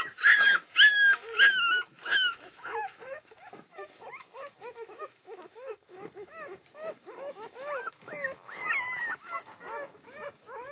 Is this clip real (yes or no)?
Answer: no